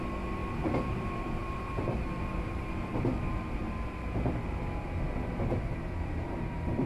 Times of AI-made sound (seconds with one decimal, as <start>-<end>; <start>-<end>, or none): 0.0-0.4; 0.9-3.6; 5.7-6.9